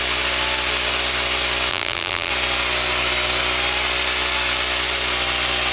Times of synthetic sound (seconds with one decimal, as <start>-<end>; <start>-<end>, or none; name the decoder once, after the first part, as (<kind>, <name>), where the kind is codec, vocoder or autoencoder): 1.7-2.3 (vocoder, BigVGAN v2)